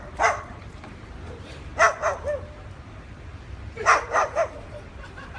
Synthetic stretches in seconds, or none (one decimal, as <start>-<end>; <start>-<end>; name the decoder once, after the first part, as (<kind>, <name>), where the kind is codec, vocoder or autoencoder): 0.0-1.7 (vocoder, BigVGAN v2); 3.7-5.4